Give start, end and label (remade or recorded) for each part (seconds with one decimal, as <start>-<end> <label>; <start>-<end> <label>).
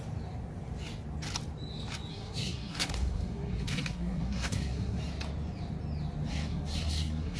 0.0-2.1 recorded; 2.1-5.0 remade; 5.0-6.3 recorded; 6.3-7.4 remade